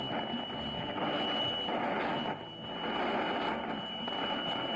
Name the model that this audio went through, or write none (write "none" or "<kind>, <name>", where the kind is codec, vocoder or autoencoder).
none